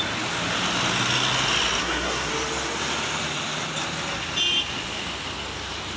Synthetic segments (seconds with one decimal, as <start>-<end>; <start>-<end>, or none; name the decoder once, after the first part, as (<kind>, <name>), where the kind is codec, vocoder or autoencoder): 1.8-2.3 (codec, SNAC)